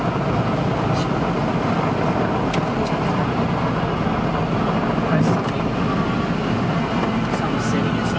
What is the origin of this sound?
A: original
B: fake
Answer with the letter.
A